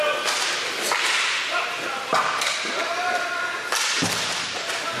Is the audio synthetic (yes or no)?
no